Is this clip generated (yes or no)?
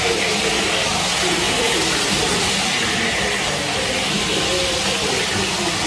no